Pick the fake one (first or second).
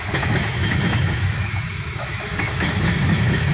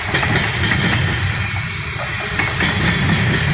first